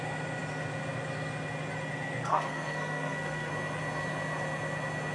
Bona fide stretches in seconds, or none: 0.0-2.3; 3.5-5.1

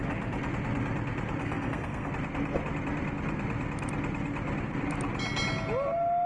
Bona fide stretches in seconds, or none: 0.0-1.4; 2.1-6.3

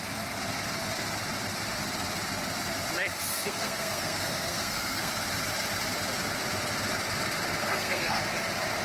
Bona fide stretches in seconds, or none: 0.0-3.3; 5.1-7.6; 8.2-8.8

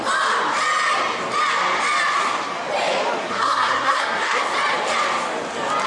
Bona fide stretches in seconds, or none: 0.0-3.2; 4.4-5.9

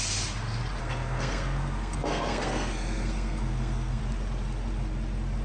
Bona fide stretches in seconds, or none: 0.0-0.8; 4.0-5.4